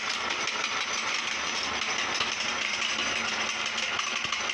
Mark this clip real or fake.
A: real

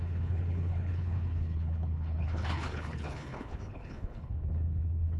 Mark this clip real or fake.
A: fake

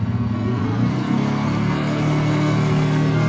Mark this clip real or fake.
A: fake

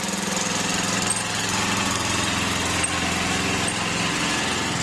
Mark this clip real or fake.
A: real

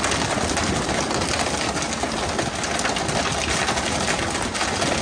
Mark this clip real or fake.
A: real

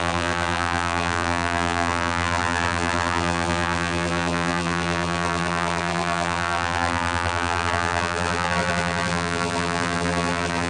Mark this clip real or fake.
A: fake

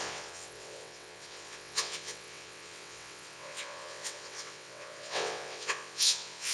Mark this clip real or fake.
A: fake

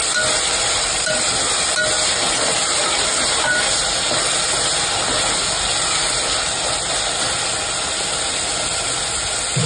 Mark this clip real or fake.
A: real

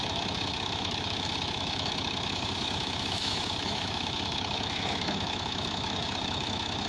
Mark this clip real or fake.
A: fake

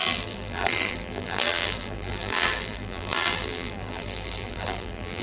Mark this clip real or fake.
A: fake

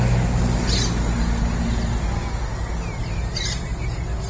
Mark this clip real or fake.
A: real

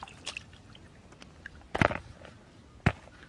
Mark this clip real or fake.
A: real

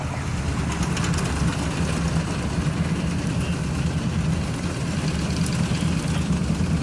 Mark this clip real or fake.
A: real